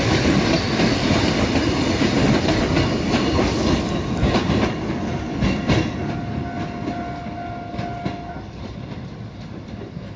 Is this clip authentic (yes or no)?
yes